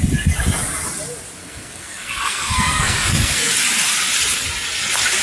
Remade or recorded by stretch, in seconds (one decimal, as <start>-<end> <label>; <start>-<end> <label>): 0.0-1.4 recorded; 1.4-3.5 remade; 3.5-5.2 recorded